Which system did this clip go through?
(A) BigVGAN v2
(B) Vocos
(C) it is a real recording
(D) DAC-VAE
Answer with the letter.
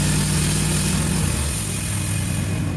C